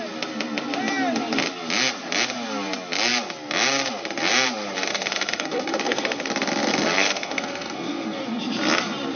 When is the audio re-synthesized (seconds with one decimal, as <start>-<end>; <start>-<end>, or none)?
4.9-6.3; 6.7-8.2